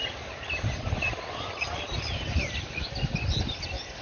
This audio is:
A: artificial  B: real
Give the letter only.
B